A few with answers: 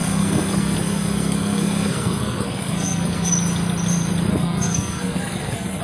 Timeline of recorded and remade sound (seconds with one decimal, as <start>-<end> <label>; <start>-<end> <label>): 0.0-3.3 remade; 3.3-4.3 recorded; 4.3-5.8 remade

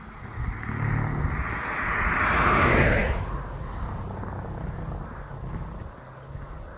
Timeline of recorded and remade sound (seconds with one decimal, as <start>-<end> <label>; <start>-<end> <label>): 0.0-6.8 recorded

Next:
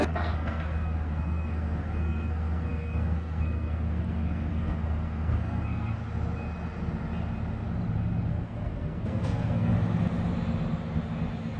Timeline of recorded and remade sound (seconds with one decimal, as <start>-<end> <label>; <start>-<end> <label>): 0.0-6.0 remade; 6.0-8.3 recorded; 8.3-9.7 remade; 9.7-11.6 recorded

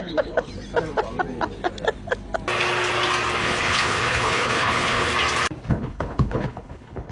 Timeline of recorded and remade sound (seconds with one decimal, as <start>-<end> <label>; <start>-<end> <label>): 0.0-0.5 remade; 0.5-3.4 recorded; 3.4-5.1 remade; 5.1-5.7 recorded; 5.7-7.1 remade

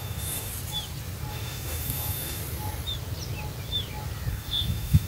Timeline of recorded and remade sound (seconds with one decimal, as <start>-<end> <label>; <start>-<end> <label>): 0.0-0.5 remade; 0.5-1.3 recorded; 1.3-2.4 remade; 2.4-4.3 recorded; 4.3-5.1 remade

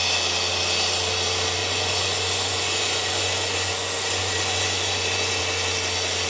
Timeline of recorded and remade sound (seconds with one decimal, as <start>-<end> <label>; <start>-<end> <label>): 0.0-1.6 recorded; 1.6-5.4 remade; 5.4-6.3 recorded